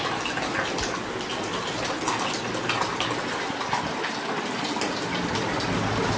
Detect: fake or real real